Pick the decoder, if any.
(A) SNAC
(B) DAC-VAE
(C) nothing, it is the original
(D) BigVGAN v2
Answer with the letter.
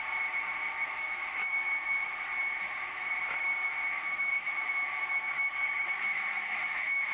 B